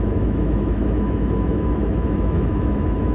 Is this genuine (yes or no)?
no